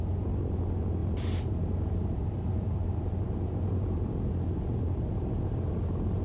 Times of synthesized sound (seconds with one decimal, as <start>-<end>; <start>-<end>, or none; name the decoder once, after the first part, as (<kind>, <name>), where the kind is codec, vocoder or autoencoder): 1.0-4.3 (vocoder, BigVGAN v2)